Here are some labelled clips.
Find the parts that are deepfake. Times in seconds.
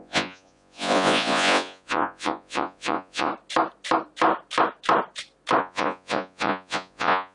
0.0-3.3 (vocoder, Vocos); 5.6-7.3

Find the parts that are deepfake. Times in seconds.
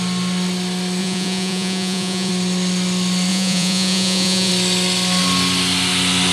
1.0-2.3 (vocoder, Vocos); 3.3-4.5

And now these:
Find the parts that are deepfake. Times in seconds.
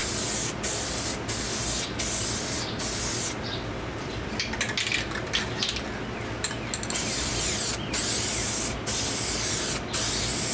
none